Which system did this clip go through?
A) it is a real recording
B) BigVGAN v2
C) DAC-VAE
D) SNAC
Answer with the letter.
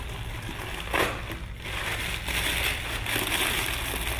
A